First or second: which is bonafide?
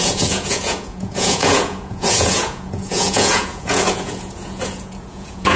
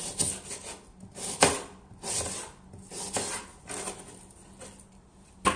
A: second